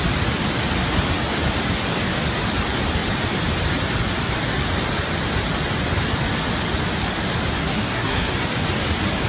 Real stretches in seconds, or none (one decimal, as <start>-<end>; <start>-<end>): 0.0-7.6; 8.3-9.3